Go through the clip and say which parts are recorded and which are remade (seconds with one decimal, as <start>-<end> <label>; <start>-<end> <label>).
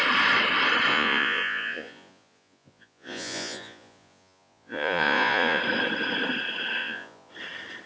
0.0-0.9 recorded; 0.9-5.6 remade; 5.6-6.8 recorded; 6.8-7.3 remade; 7.3-7.9 recorded